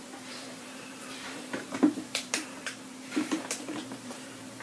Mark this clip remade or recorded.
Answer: remade